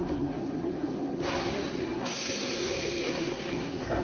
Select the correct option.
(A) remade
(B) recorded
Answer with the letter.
A